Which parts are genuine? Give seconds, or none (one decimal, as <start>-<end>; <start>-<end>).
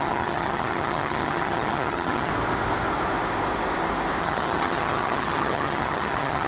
2.3-4.2